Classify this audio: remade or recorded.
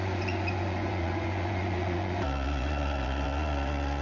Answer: remade